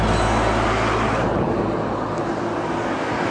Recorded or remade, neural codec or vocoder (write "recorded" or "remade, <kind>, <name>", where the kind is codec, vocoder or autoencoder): recorded